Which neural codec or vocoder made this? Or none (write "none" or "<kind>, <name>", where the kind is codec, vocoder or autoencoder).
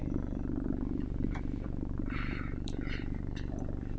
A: vocoder, BigVGAN v2